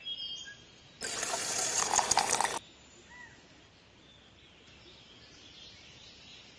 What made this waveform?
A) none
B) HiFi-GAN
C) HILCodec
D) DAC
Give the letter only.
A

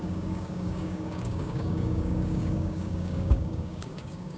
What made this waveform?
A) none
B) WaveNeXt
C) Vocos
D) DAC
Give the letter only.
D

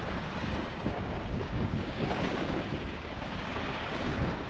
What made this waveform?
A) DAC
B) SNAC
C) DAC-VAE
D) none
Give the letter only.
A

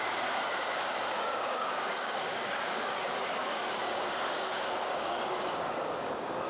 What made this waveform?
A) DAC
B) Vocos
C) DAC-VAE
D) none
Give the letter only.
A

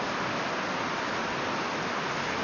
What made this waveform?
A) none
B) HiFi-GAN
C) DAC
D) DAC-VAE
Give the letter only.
A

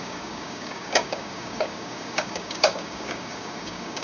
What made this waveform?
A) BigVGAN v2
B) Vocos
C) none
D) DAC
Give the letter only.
D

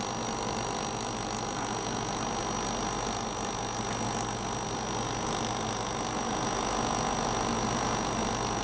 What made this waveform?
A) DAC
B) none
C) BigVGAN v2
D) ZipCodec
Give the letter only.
B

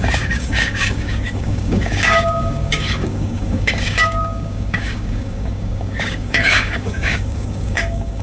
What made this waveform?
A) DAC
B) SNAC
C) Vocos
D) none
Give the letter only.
A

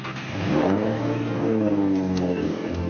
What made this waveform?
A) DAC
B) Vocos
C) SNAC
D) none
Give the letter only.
A